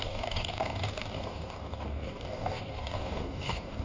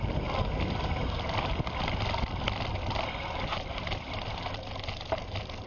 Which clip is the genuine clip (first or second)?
second